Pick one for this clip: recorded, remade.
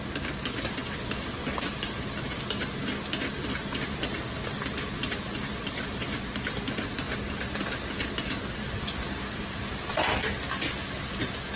recorded